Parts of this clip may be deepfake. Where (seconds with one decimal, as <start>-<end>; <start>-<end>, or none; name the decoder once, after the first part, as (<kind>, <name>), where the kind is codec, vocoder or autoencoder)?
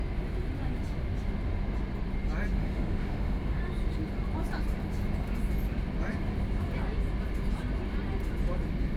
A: 2.6-3.6 (autoencoder, DAC-VAE)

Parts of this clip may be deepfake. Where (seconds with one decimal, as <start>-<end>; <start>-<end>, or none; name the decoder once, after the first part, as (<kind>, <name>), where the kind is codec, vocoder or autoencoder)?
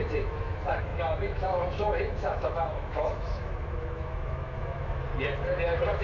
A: 0.0-5.1 (autoencoder, DAC-VAE)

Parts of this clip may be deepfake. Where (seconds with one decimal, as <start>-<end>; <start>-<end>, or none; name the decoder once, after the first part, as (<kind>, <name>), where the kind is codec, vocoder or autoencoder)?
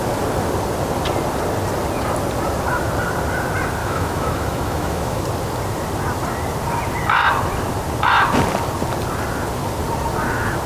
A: 3.8-5.2 (autoencoder, DAC-VAE)